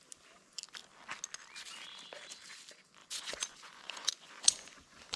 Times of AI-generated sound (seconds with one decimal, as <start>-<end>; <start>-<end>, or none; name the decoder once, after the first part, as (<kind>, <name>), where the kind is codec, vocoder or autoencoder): 3.0-5.2 (vocoder, Vocos)